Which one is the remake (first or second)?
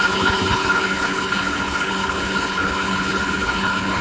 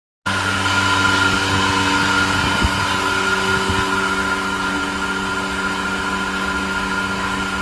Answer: first